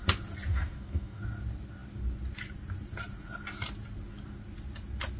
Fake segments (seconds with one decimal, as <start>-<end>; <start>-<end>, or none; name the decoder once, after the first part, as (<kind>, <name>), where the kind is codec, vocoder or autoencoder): 0.5-1.2 (codec, DAC)